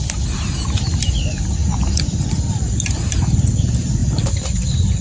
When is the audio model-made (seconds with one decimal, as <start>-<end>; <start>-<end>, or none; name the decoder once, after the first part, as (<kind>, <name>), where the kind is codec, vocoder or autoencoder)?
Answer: none